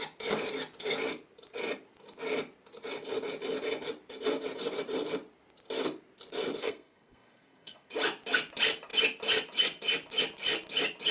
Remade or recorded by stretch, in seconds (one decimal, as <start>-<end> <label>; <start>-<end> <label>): 0.0-6.6 recorded; 6.6-7.9 remade; 7.9-11.1 recorded